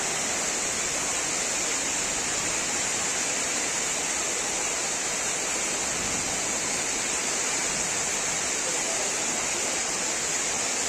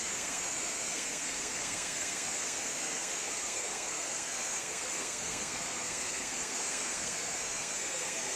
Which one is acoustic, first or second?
first